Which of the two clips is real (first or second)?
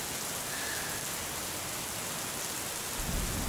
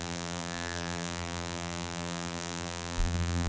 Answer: first